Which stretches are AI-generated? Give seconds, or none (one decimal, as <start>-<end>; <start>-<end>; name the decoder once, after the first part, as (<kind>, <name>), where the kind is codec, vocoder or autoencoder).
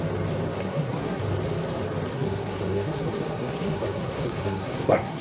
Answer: 0.6-1.2 (codec, SNAC); 2.1-5.2